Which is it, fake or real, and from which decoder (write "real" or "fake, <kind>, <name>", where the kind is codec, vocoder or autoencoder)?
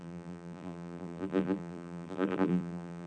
fake, vocoder, BigVGAN v2